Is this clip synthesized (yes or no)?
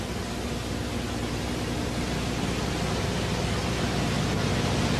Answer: no